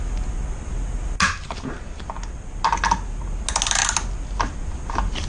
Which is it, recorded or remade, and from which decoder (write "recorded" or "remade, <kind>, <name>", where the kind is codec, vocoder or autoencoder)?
recorded